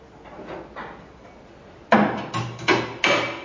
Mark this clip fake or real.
real